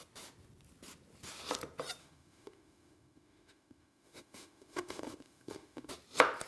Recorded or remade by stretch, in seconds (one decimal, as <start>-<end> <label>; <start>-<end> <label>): 0.0-2.0 recorded; 2.0-5.9 remade; 5.9-6.5 recorded